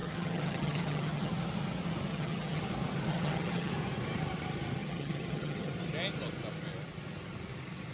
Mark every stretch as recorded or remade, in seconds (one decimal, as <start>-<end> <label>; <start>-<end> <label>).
0.0-1.3 remade; 1.3-2.1 recorded; 2.1-2.6 remade; 2.6-3.1 recorded; 3.1-3.7 remade; 3.7-4.8 recorded; 4.8-5.7 remade; 5.7-7.9 recorded